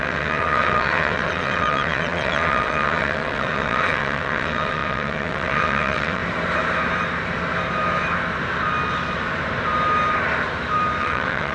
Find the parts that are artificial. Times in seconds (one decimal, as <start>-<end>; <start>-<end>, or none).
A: 0.0-6.2; 11.0-11.5